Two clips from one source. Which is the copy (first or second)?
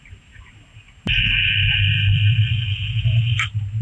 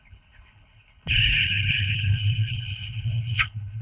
second